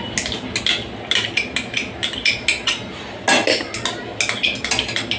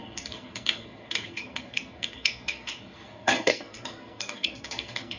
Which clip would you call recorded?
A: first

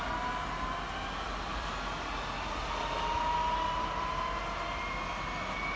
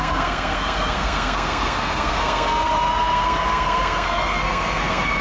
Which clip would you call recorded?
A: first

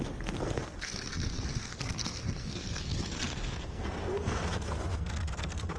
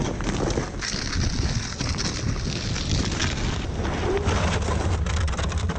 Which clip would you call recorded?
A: second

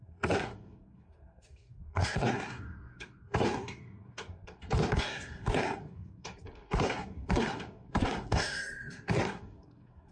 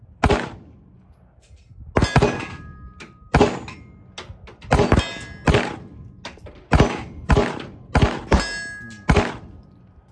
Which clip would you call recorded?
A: second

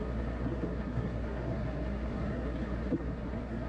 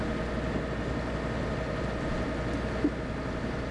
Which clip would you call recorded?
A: second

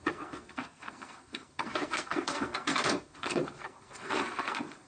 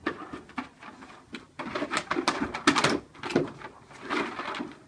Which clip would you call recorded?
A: second